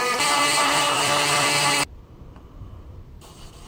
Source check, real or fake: fake